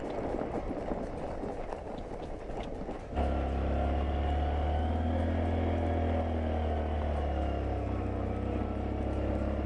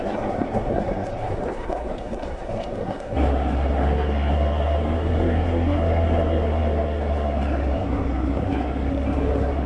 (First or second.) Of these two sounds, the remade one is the second